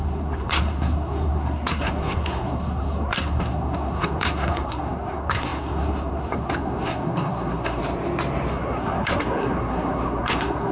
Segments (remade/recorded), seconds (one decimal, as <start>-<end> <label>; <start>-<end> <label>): 0.0-7.8 remade; 7.8-8.5 recorded; 8.5-10.7 remade